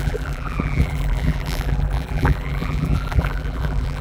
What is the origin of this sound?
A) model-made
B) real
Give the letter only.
A